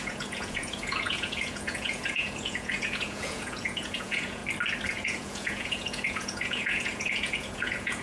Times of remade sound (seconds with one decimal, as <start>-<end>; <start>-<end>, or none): 0.0-4.4; 4.9-8.0